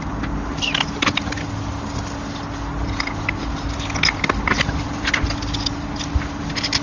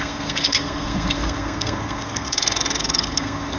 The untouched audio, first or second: first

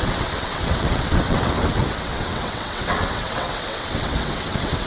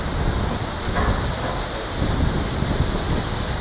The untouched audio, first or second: second